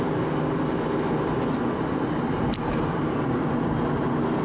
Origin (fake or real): real